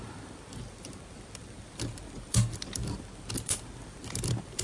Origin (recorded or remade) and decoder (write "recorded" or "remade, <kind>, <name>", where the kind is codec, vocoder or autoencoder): remade, vocoder, BigVGAN v2